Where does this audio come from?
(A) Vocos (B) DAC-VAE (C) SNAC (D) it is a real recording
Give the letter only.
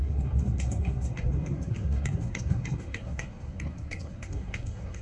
C